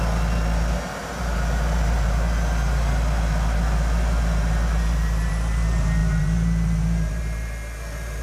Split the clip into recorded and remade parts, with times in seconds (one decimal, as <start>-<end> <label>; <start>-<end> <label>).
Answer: 0.0-8.2 recorded